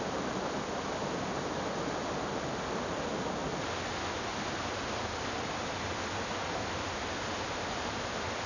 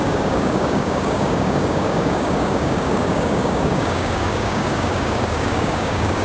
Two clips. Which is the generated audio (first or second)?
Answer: second